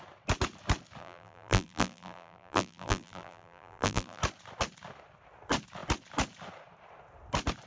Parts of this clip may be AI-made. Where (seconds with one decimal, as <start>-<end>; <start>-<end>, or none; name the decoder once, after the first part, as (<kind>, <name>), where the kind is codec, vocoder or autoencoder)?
1.0-4.2 (vocoder, BigVGAN v2)